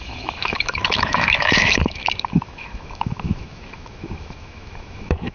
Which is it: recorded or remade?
remade